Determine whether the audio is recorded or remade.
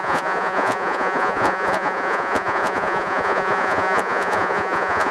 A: remade